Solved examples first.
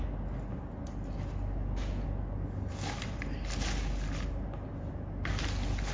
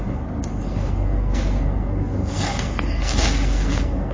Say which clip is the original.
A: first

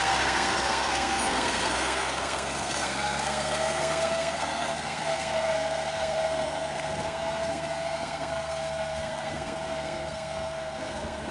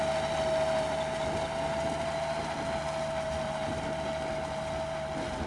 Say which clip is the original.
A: second